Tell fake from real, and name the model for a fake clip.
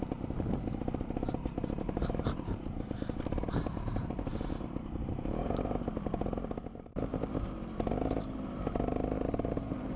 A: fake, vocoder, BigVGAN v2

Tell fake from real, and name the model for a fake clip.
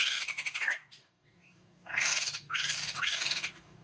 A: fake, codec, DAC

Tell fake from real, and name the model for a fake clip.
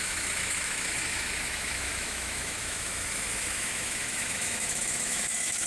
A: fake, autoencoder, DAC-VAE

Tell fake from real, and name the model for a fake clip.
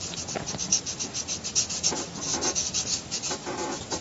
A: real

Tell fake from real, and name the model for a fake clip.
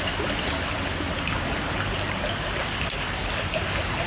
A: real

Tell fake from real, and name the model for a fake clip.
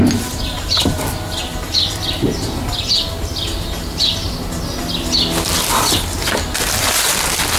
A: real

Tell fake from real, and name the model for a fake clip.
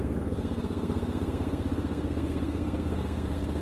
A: fake, codec, SNAC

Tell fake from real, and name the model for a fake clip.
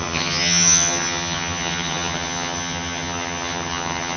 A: fake, vocoder, HiFi-GAN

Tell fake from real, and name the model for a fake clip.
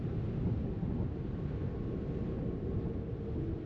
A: real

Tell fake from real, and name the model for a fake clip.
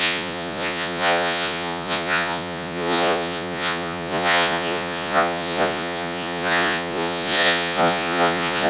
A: fake, vocoder, Vocos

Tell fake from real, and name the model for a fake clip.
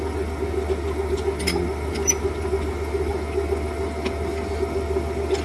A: real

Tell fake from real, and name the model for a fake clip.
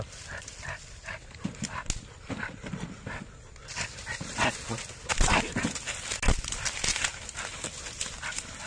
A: real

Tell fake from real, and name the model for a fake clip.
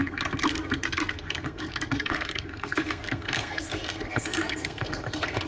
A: fake, codec, SNAC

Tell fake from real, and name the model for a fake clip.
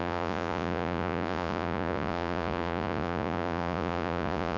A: fake, vocoder, Vocos